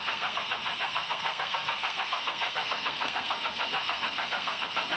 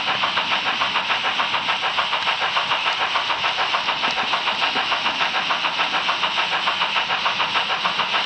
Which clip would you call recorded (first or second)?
second